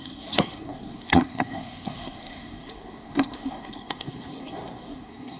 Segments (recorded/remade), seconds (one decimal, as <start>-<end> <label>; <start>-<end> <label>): 0.0-5.4 remade